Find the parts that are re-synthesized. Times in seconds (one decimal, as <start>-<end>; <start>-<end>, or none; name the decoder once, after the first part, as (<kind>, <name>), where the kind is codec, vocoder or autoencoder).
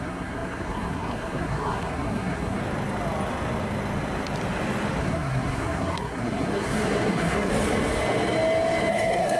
0.0-2.6 (codec, SNAC); 5.0-7.5; 8.9-9.4